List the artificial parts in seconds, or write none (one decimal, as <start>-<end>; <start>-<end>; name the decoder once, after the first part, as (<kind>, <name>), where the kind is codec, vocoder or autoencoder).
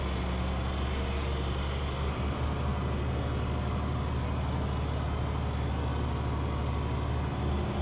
none